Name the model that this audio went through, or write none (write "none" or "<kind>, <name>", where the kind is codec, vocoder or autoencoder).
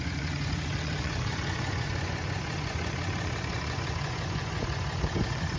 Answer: vocoder, Vocos